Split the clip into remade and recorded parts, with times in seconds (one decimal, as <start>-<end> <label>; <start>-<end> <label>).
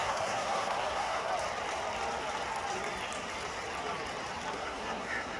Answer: 0.0-1.3 remade; 1.3-4.5 recorded; 4.5-5.4 remade